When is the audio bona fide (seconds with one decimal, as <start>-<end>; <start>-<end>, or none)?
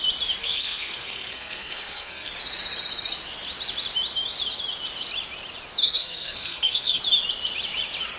0.0-0.4; 2.3-5.8; 7.0-8.2